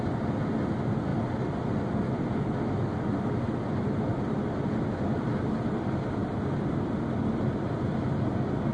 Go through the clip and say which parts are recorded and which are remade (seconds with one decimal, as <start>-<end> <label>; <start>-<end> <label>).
0.0-8.7 recorded